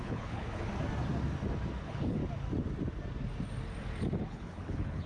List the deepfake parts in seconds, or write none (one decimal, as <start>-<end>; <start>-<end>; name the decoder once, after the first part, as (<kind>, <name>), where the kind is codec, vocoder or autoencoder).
0.0-0.7 (codec, HILCodec); 1.8-2.2; 4.2-5.1